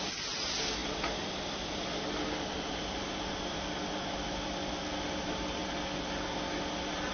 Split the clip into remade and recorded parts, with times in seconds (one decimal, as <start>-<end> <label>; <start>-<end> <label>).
0.0-7.1 recorded